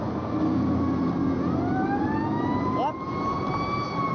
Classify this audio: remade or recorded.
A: recorded